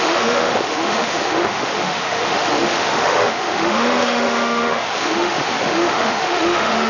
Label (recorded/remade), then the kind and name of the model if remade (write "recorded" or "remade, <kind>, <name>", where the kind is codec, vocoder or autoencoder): remade, autoencoder, DAC-VAE